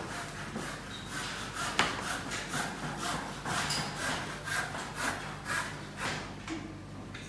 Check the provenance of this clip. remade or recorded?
recorded